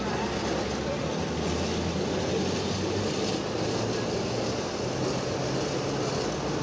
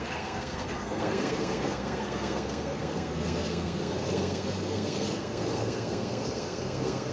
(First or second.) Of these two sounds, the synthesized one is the second